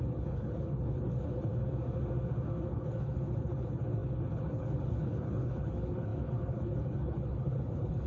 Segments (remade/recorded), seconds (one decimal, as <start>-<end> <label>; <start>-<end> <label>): 0.0-1.5 remade; 1.5-2.7 recorded; 2.7-8.1 remade